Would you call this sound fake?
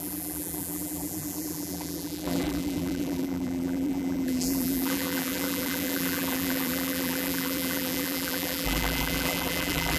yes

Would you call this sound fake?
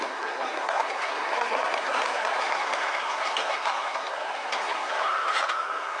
yes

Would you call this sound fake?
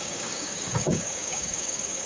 yes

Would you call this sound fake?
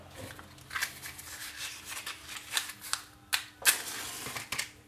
no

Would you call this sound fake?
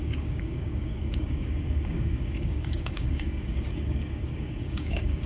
yes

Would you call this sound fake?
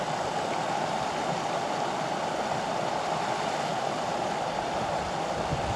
no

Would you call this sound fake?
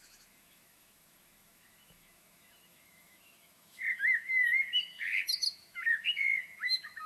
yes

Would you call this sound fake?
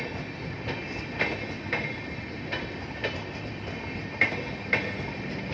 no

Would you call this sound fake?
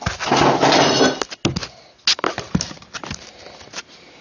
no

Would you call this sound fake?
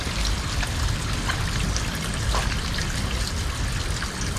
no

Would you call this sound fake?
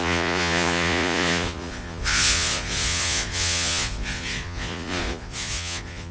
yes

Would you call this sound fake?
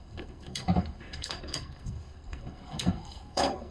yes